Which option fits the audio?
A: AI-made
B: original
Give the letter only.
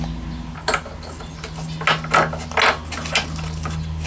B